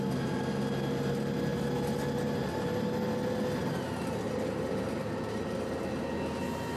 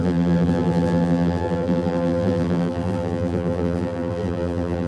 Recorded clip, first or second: first